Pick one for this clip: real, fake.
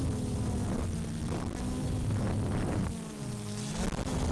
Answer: real